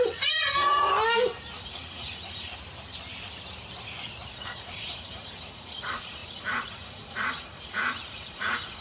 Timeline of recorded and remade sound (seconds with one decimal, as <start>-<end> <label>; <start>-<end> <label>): 0.0-0.9 remade; 0.9-1.6 recorded; 1.6-2.5 remade; 2.5-4.3 recorded; 4.3-8.8 remade